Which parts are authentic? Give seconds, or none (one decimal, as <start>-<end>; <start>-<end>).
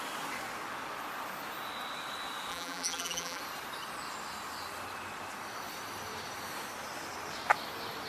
0.0-2.5; 3.4-8.1